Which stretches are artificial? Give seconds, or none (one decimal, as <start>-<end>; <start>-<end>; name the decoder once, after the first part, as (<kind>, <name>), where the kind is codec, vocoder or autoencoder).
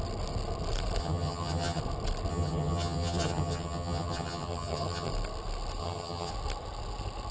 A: 1.0-1.8 (vocoder, HiFi-GAN); 2.3-5.1; 5.8-6.3